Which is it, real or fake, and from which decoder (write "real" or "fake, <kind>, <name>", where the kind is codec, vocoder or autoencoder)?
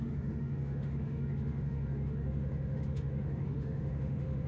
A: fake, autoencoder, DAC-VAE